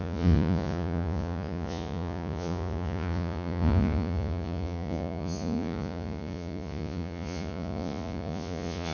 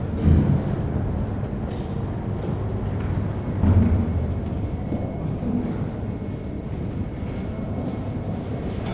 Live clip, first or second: second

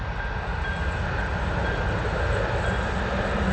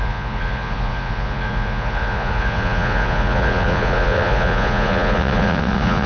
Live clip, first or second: first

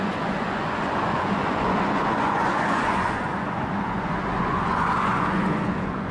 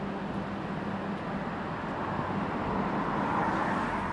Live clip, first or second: second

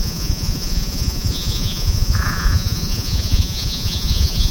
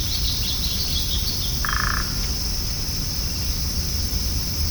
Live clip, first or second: second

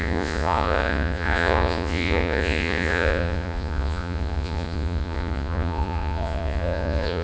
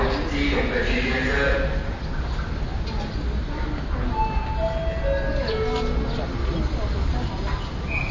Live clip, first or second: second